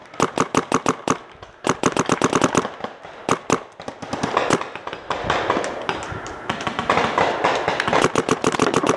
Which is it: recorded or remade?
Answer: recorded